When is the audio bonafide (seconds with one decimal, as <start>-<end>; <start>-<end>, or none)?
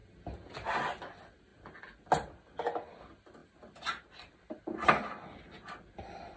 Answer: 0.0-6.4